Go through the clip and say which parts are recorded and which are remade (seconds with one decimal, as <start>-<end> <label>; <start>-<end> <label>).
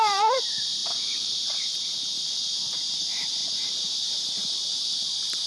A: 0.0-5.5 remade